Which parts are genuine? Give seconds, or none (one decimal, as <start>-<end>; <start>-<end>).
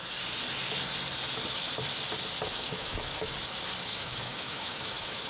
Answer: 0.0-2.5; 3.3-3.9